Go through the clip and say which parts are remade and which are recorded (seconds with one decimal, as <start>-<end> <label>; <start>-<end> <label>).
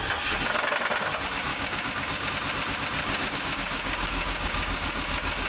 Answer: 0.0-1.5 recorded; 1.5-2.3 remade; 2.3-3.0 recorded; 3.0-5.5 remade